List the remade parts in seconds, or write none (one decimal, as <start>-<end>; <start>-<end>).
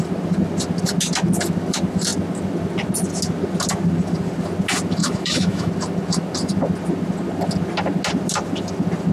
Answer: 5.0-5.7